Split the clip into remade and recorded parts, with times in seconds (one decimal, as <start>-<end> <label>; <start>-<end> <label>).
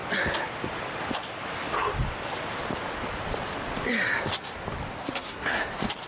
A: 0.0-5.0 recorded; 5.0-5.6 remade; 5.6-6.1 recorded